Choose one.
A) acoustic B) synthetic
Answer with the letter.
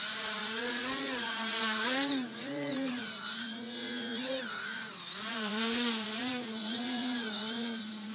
B